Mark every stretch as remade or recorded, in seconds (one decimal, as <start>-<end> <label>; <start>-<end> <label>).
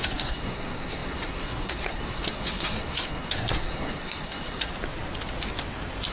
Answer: 0.0-4.7 remade; 4.7-6.1 recorded